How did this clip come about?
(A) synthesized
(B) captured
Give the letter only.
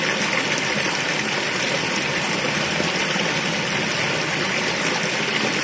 B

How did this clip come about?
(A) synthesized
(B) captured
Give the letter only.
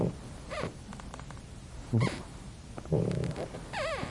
A